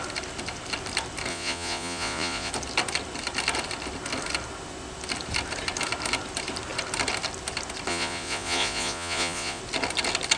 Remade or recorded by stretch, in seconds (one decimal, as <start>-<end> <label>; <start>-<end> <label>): 0.0-1.3 recorded; 1.3-2.5 remade; 2.5-7.9 recorded; 7.9-9.6 remade; 9.6-10.4 recorded

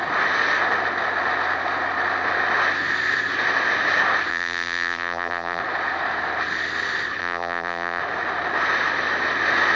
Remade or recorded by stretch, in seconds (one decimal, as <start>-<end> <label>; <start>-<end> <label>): 0.0-4.3 recorded; 4.3-5.6 remade; 5.6-7.2 recorded; 7.2-8.0 remade; 8.0-9.8 recorded

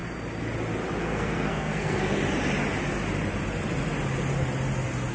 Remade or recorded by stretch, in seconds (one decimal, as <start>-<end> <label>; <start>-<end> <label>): 0.0-1.0 recorded; 1.0-2.2 remade; 2.2-5.1 recorded

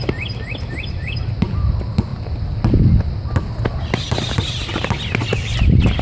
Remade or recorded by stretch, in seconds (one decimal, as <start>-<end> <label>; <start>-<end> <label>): 0.0-6.0 recorded

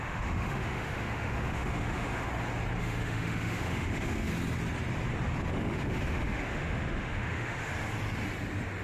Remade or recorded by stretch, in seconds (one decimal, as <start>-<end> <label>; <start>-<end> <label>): 0.0-2.3 remade; 2.3-2.8 recorded; 2.8-4.3 remade; 4.3-5.5 recorded; 5.5-7.7 remade; 7.7-8.8 recorded